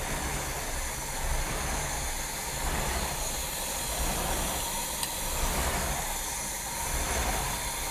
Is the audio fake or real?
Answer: real